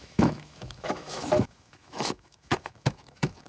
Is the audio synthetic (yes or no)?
yes